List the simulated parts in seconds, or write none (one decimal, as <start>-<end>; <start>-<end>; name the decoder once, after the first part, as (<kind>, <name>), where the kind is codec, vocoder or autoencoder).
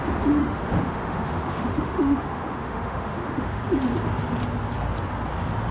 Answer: 0.4-3.6 (autoencoder, DAC-VAE)